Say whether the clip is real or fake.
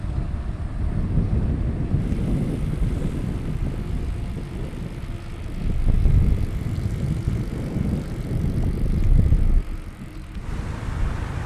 real